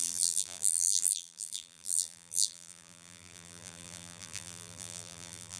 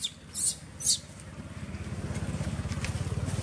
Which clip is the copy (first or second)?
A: first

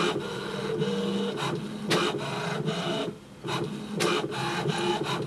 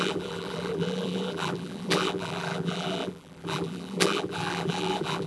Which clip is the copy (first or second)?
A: second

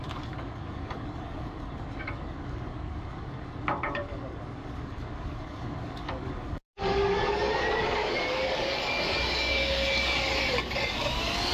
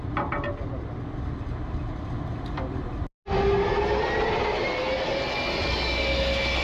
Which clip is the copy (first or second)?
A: first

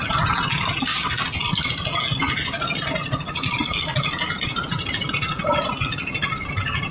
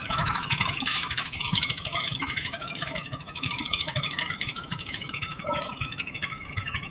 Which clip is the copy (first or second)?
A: second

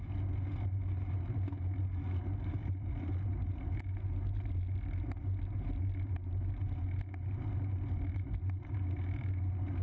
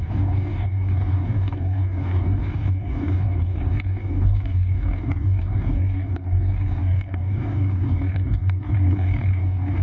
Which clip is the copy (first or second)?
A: second